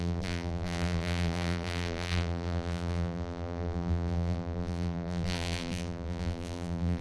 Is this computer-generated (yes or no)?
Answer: yes